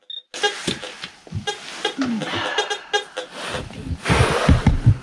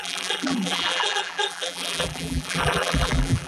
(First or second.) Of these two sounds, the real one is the first